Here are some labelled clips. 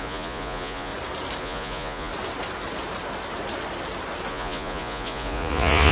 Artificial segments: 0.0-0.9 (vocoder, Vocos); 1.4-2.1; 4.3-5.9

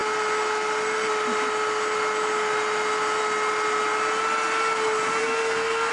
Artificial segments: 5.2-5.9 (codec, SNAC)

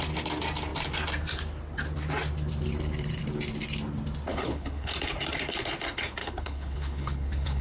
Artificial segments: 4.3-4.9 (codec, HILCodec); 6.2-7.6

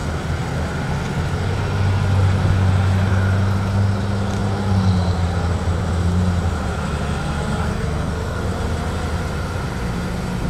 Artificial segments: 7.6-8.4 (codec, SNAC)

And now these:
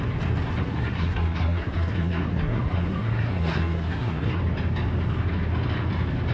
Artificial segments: 0.6-4.4 (codec, SNAC)

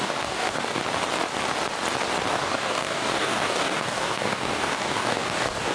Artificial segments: 0.0-0.8 (codec, DAC); 2.3-5.7